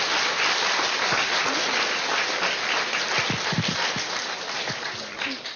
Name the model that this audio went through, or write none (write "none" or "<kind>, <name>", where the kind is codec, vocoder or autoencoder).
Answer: none